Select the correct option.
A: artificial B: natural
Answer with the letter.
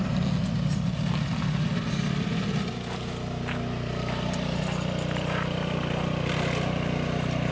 B